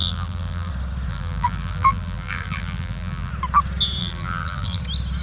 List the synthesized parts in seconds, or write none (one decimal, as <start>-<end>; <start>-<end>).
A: 0.0-0.7; 1.1-3.3; 4.0-4.8

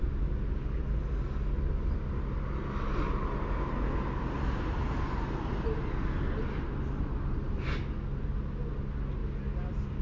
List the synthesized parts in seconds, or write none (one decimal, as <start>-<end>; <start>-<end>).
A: 9.2-10.0

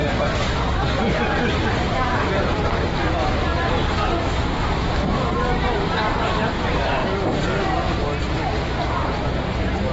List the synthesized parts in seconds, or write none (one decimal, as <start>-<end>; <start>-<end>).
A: 1.2-3.5; 5.8-7.0; 8.8-9.9

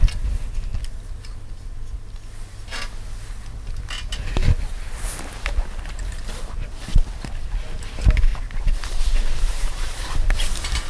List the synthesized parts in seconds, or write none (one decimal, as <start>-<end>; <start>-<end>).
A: 6.9-7.6; 8.3-10.1

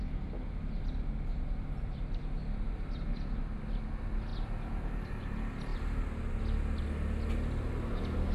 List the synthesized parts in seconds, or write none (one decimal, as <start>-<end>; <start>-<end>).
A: 1.3-3.8